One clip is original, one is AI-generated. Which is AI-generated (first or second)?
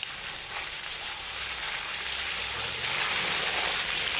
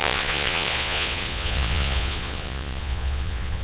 second